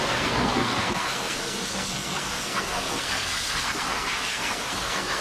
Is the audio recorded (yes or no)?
no